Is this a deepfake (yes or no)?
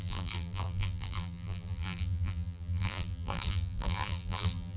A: yes